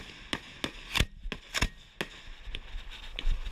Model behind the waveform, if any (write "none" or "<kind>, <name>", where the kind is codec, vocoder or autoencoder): none